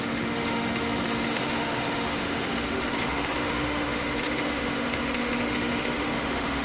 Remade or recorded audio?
remade